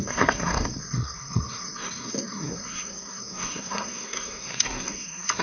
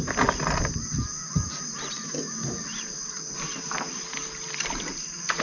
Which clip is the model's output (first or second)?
first